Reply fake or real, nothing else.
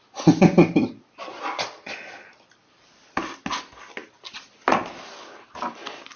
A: real